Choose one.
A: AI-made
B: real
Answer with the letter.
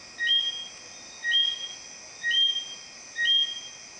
B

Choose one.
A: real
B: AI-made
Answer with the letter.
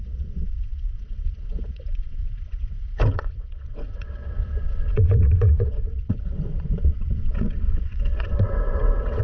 B